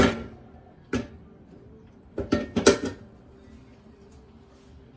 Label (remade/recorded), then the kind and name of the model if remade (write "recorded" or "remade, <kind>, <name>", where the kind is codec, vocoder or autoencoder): recorded